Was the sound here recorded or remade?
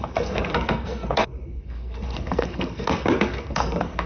remade